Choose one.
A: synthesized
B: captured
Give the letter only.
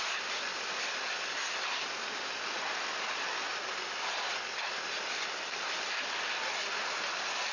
B